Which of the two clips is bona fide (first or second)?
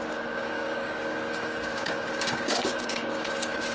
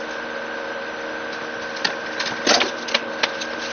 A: second